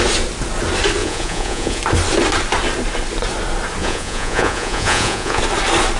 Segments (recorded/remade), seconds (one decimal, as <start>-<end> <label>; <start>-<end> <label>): 0.0-1.0 recorded; 1.0-1.8 remade; 1.8-3.8 recorded; 3.8-5.4 remade; 5.4-6.0 recorded